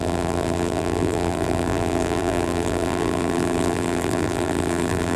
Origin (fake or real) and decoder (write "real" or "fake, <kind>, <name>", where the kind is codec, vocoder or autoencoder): fake, vocoder, BigVGAN v2